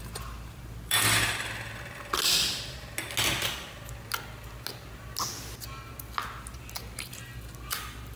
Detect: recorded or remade recorded